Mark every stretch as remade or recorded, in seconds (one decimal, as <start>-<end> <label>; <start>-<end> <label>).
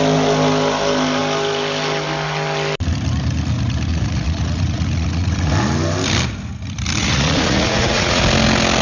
0.0-3.9 recorded; 3.9-5.5 remade; 5.5-7.0 recorded; 7.0-8.2 remade; 8.2-8.8 recorded